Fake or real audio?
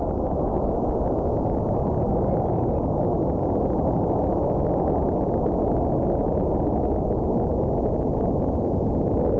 real